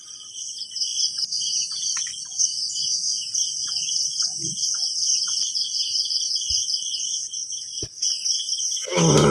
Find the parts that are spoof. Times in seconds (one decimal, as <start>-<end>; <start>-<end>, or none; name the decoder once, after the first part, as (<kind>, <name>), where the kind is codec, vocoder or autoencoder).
0.0-7.4 (vocoder, BigVGAN v2)